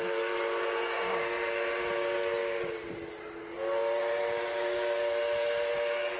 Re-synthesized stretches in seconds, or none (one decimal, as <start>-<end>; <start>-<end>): none